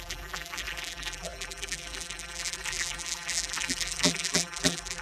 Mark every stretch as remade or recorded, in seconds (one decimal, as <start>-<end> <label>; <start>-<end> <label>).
0.0-5.0 remade